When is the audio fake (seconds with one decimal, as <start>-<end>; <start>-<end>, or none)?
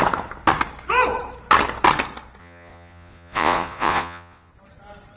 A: 2.4-4.5